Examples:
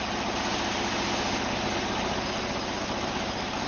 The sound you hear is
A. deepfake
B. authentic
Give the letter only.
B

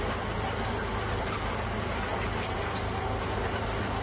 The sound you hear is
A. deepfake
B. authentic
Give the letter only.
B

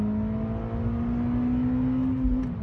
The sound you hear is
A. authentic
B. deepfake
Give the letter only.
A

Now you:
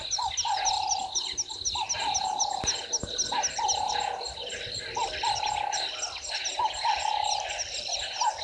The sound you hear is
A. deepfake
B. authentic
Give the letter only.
B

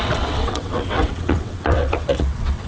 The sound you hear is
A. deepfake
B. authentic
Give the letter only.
A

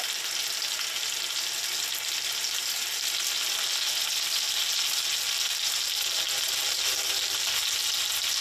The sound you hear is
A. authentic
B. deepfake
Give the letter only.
A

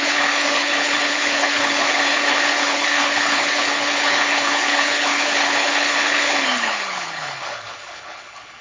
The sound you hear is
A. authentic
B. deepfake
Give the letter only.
B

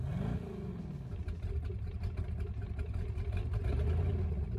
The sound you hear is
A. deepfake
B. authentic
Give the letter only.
B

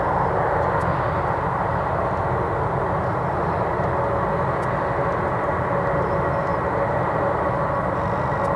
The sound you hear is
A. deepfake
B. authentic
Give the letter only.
B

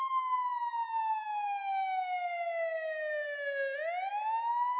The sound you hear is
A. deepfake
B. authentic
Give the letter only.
B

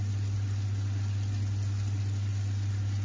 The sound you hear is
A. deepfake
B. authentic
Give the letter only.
B